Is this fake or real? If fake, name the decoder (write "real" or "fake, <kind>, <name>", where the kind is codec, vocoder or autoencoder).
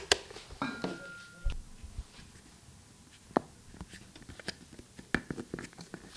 real